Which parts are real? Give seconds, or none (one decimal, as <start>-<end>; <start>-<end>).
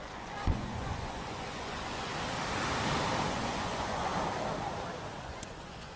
2.1-3.3; 4.1-5.2